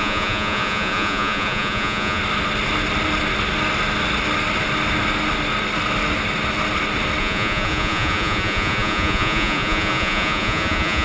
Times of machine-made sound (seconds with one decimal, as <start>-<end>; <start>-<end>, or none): 0.0-2.2; 7.2-11.0